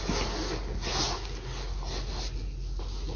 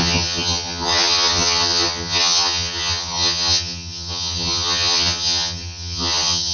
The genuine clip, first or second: first